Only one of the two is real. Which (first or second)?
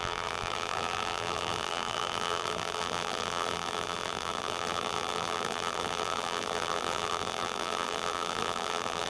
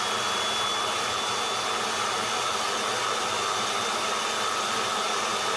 second